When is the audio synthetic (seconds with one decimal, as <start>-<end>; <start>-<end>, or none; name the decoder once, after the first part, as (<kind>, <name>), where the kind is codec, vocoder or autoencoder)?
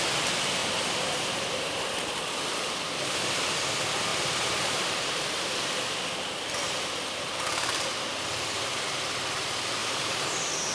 0.6-2.2 (vocoder, BigVGAN v2); 4.1-5.7; 9.8-10.7